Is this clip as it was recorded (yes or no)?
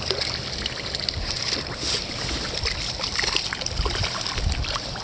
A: yes